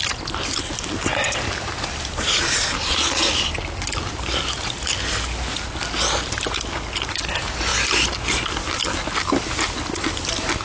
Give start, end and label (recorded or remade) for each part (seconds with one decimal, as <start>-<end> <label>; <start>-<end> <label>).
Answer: 0.0-10.6 recorded